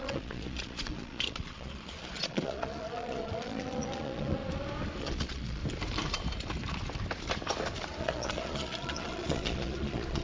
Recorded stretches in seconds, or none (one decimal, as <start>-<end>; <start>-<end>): 4.4-5.0; 5.6-8.0